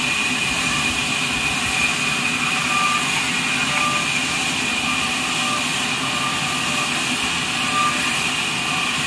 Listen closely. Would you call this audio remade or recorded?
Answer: recorded